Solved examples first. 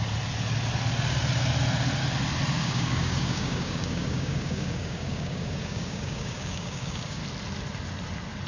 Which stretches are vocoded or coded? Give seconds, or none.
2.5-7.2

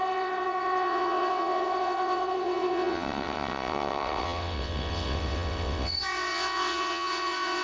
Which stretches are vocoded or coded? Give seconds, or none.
0.0-7.6